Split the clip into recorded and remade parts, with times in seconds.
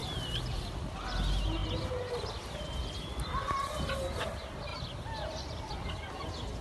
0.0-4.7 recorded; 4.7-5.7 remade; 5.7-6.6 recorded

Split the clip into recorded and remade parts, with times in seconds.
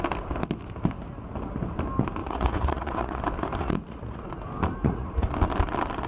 0.0-2.2 recorded; 2.2-3.2 remade; 3.2-3.6 recorded; 3.6-4.2 remade; 4.2-4.8 recorded; 4.8-5.3 remade; 5.3-6.1 recorded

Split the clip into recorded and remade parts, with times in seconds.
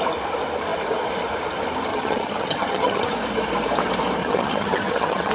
0.0-1.9 recorded; 1.9-3.1 remade; 3.1-4.2 recorded; 4.2-5.3 remade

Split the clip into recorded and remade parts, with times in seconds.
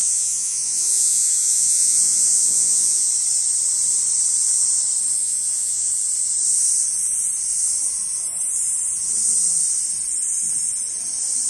0.0-3.1 remade; 3.1-5.2 recorded; 5.2-5.9 remade; 5.9-11.5 recorded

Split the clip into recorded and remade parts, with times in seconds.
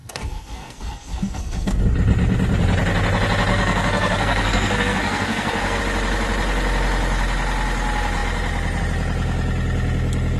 0.0-1.8 remade; 1.8-3.5 recorded; 3.5-5.8 remade; 5.8-10.4 recorded